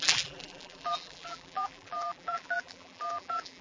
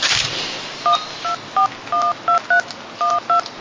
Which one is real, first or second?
second